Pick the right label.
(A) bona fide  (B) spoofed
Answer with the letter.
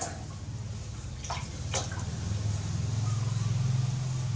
A